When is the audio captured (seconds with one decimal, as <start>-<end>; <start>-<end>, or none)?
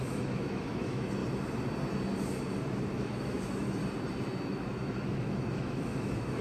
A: 1.2-2.6; 3.8-4.5